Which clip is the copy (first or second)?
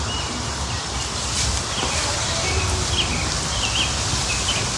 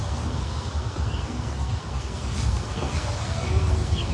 second